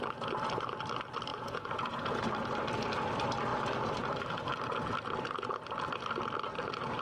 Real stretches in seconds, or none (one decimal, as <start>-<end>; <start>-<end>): 0.0-1.3; 2.2-7.0